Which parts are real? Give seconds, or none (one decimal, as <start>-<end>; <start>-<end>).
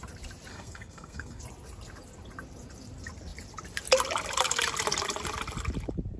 0.0-0.5; 1.4-6.2